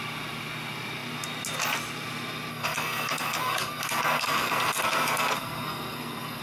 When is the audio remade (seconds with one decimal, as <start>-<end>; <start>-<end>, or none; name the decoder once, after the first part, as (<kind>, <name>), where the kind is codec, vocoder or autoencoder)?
2.5-6.4 (codec, SNAC)